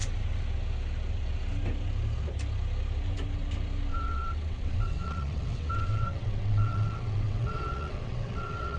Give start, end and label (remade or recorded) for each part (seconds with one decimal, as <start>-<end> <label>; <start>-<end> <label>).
0.0-3.9 recorded; 3.9-8.8 remade